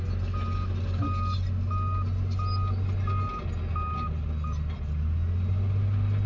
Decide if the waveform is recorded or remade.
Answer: recorded